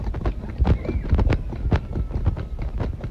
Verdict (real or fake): real